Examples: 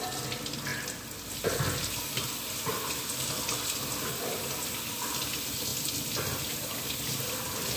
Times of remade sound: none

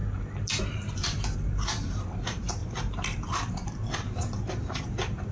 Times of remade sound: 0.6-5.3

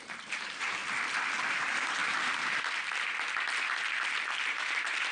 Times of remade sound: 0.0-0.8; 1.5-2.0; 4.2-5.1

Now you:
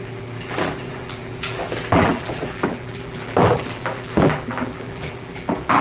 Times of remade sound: 0.0-5.8